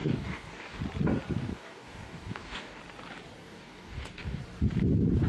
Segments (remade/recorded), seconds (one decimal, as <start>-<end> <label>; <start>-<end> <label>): 0.0-0.8 remade; 0.8-1.4 recorded; 1.4-2.8 remade; 2.8-3.4 recorded; 3.4-4.4 remade; 4.4-5.3 recorded